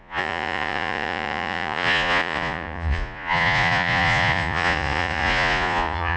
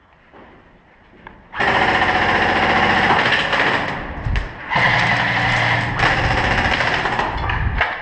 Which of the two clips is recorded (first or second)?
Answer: second